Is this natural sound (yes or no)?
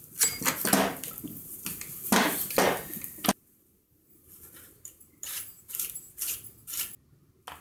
yes